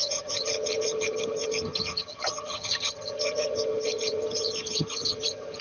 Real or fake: fake